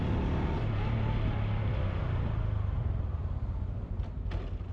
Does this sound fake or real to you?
real